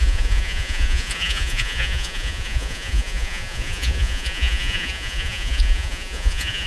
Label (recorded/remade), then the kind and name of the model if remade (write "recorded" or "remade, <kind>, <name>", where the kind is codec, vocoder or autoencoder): remade, vocoder, Vocos